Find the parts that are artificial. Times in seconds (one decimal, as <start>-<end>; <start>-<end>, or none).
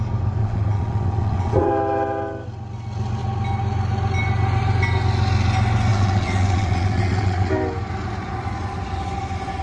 0.4-1.7; 5.9-7.5